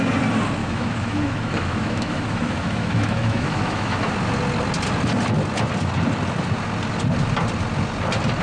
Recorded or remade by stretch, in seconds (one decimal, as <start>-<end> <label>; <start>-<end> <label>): 0.0-0.6 recorded; 0.6-4.1 remade; 4.1-8.4 recorded